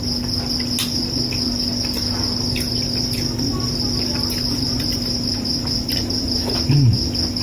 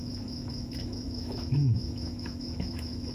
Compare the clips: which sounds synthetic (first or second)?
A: second